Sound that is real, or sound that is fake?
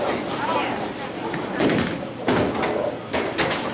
real